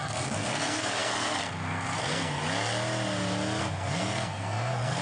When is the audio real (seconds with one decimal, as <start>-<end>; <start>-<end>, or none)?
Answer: 2.4-3.6